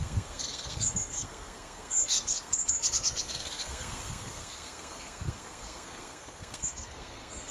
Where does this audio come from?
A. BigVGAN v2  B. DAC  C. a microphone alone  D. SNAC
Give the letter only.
D